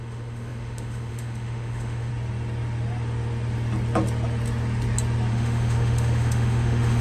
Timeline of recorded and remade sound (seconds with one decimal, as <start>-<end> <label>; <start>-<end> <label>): 0.0-2.1 remade; 2.1-5.3 recorded; 5.3-7.0 remade